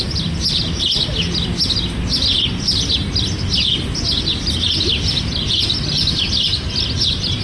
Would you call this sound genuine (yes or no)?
yes